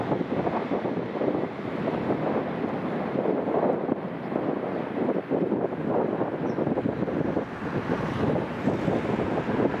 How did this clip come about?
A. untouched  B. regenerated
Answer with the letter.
A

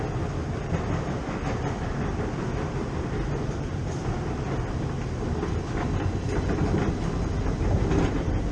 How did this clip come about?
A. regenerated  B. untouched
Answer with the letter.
B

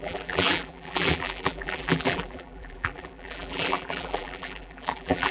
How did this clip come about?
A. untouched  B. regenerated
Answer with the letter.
B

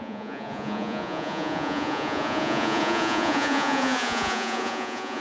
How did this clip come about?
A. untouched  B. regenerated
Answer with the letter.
B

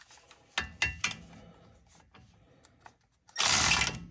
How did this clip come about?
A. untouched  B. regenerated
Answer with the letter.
A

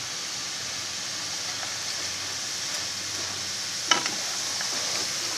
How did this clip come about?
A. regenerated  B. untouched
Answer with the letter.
B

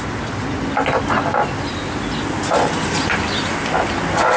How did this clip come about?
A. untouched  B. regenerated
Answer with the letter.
A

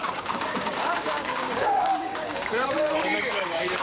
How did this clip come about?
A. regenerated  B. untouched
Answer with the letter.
A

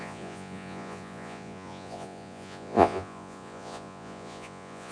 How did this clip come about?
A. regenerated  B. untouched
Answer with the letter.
A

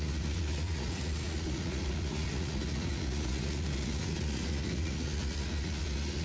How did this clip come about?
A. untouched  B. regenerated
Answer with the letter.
B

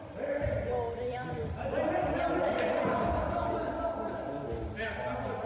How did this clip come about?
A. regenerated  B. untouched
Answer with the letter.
B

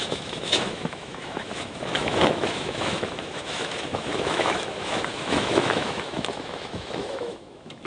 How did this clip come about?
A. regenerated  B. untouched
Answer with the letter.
A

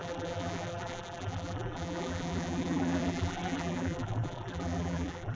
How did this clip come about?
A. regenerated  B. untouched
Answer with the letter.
A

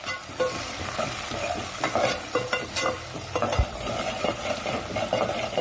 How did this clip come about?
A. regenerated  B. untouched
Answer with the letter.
A